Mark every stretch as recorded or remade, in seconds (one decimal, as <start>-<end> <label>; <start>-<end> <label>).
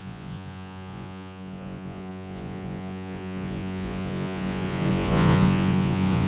0.0-6.3 remade